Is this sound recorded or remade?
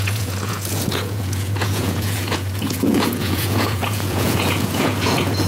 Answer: remade